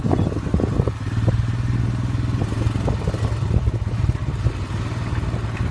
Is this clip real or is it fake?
real